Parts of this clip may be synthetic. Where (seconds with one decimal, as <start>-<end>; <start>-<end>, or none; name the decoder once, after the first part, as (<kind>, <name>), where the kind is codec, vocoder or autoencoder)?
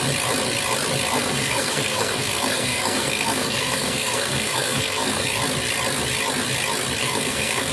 1.2-5.4 (codec, SNAC); 7.0-7.7